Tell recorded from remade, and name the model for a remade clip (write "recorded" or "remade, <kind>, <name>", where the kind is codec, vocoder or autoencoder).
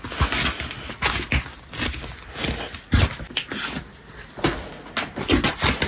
recorded